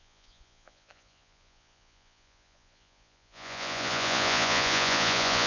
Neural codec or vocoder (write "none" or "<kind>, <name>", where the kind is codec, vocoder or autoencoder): vocoder, Vocos